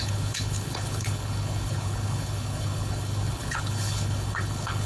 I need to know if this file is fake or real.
fake